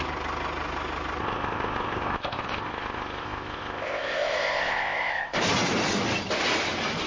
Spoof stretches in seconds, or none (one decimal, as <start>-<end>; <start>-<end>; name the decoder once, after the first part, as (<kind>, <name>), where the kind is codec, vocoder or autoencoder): 1.2-5.4 (codec, ZipCodec)